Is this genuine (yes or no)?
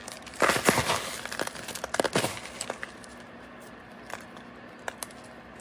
yes